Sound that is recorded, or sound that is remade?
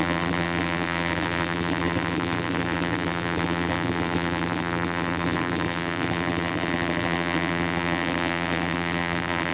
remade